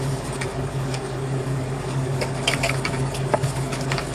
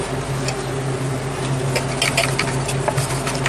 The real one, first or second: second